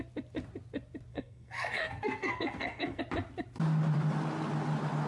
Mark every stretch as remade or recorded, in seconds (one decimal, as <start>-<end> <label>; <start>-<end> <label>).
0.0-1.1 recorded; 1.1-3.0 remade; 3.0-5.1 recorded